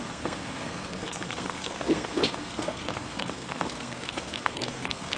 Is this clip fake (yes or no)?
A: yes